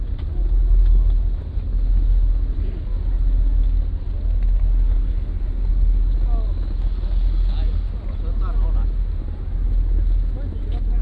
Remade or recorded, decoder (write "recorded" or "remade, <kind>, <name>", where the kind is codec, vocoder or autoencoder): recorded